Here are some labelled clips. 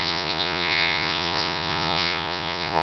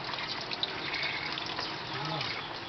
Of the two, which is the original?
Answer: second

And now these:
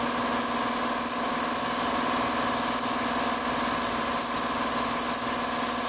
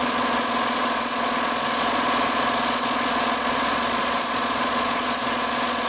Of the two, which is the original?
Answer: first